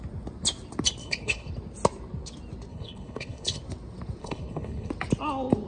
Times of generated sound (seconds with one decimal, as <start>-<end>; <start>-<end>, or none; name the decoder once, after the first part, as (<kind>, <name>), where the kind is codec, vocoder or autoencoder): 1.0-1.5 (codec, HILCodec); 2.7-3.6; 4.2-4.9